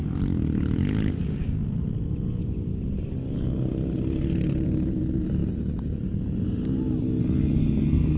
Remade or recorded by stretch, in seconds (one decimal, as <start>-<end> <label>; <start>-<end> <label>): 0.0-8.2 recorded